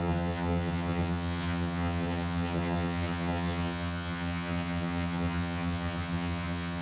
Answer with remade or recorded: remade